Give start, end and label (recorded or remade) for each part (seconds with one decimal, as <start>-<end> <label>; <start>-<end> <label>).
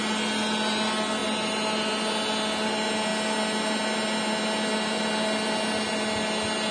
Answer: 0.0-6.7 recorded